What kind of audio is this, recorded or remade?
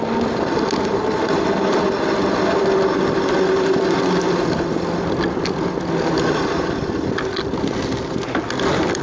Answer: recorded